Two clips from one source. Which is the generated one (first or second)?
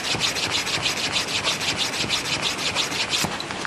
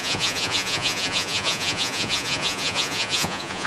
second